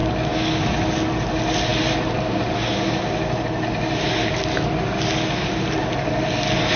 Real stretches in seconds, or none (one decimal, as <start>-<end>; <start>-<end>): 0.0-6.8